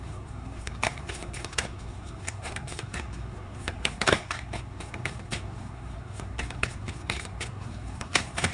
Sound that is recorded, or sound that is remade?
remade